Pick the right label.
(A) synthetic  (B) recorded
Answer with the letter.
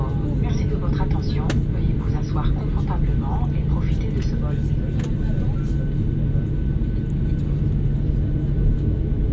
B